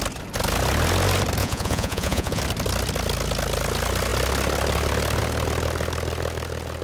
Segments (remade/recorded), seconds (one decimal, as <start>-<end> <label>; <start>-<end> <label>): 0.0-1.4 recorded; 1.4-2.4 remade; 2.4-6.8 recorded